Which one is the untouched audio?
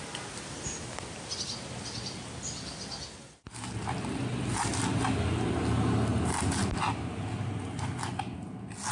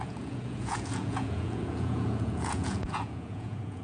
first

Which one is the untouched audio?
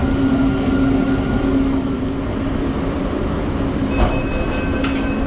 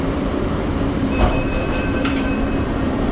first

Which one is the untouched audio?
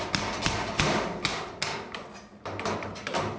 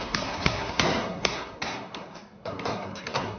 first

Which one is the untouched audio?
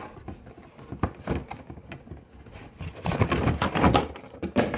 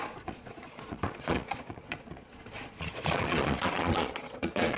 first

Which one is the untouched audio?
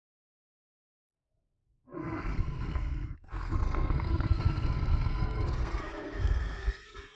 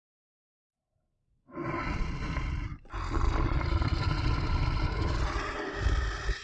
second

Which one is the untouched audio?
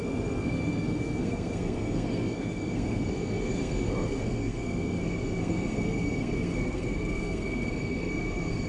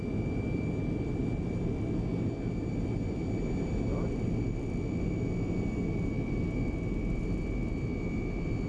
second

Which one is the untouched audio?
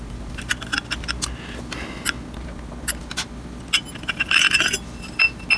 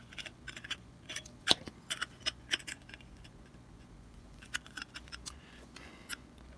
first